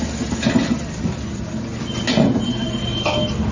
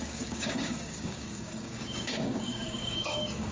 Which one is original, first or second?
first